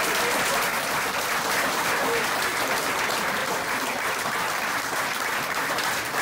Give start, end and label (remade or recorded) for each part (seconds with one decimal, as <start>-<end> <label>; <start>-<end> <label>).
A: 0.0-0.7 recorded; 0.7-1.3 remade; 1.3-3.4 recorded; 3.4-5.7 remade; 5.7-6.2 recorded